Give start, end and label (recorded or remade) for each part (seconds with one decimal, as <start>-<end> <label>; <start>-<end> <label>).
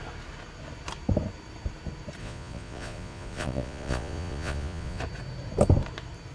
0.0-2.2 recorded; 2.2-5.0 remade; 5.0-6.3 recorded